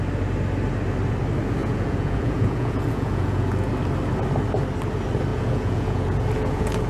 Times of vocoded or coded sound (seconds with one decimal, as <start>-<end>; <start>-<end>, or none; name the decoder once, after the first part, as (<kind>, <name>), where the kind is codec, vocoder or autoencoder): 1.6-3.7 (vocoder, Vocos); 5.3-6.9